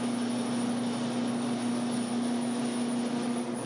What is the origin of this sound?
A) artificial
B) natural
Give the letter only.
B